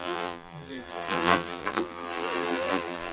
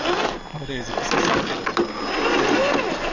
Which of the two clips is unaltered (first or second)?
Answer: second